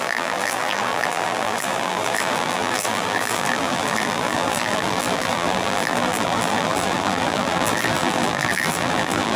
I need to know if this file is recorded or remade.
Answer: remade